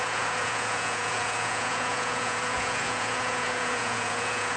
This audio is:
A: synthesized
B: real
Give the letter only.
A